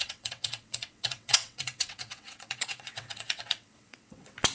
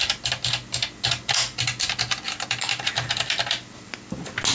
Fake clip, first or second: first